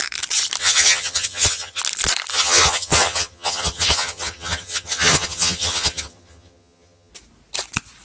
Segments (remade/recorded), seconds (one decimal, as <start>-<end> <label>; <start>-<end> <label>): 0.0-0.6 recorded; 0.6-1.8 remade; 1.8-2.3 recorded; 2.3-7.1 remade; 7.1-8.0 recorded